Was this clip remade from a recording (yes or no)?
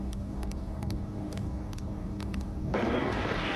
yes